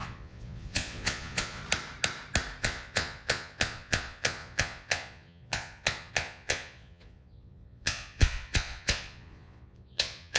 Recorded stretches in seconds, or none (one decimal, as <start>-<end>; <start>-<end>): 1.6-2.6